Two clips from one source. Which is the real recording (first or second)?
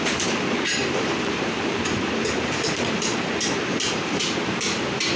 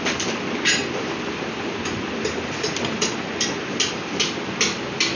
second